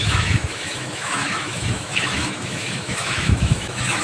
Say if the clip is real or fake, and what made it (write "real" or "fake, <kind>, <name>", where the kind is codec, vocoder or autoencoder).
fake, autoencoder, DAC-VAE